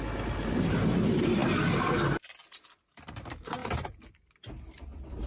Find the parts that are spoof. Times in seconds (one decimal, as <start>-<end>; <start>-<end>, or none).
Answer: 3.6-4.1